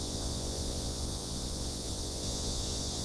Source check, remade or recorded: remade